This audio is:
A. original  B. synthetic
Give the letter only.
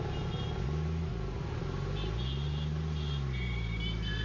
A